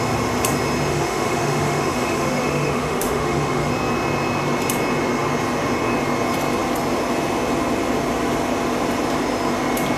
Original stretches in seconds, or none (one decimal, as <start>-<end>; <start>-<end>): 0.0-0.9; 3.7-10.0